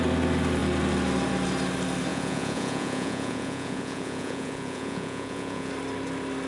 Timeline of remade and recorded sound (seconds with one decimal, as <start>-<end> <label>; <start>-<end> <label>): 0.0-2.1 recorded; 2.1-5.7 remade; 5.7-6.5 recorded